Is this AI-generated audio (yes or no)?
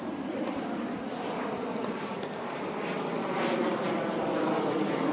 yes